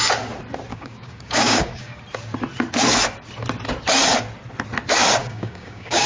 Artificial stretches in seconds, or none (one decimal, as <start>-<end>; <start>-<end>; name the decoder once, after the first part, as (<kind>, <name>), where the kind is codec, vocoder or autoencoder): 0.7-2.0 (codec, DAC); 5.2-6.1